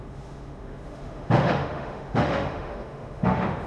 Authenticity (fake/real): fake